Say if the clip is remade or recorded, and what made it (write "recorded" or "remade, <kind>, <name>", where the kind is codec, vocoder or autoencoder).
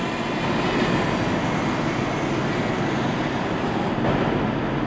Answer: recorded